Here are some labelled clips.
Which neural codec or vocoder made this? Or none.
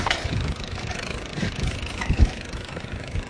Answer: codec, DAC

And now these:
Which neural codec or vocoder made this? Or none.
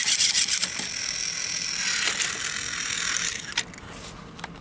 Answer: none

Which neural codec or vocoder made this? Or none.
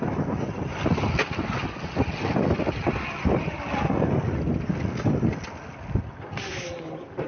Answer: none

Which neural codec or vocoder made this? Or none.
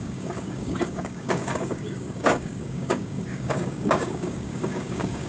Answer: codec, DAC